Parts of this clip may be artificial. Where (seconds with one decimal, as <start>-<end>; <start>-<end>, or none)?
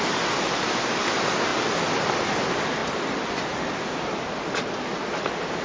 none